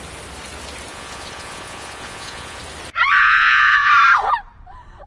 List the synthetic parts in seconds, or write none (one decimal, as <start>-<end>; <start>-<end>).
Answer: 0.9-2.6; 3.2-3.9